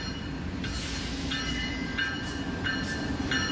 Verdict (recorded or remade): recorded